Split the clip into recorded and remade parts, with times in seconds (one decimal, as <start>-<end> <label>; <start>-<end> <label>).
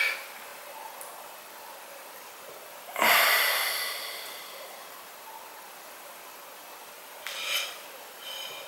0.0-8.7 recorded